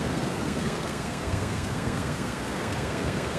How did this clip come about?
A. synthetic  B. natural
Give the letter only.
A